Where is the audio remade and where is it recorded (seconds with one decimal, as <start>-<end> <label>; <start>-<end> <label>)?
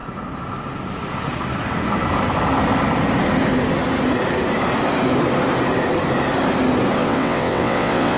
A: 0.0-7.0 recorded; 7.0-8.2 remade